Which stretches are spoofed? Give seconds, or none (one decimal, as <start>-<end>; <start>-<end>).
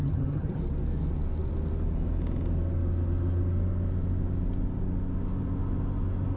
0.0-0.6